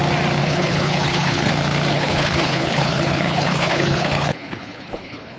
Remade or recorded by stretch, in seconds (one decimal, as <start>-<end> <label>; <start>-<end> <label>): 0.0-0.4 recorded; 0.4-1.5 remade; 1.5-1.9 recorded; 1.9-5.4 remade